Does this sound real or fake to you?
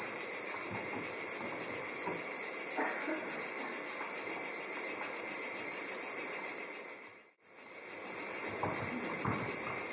real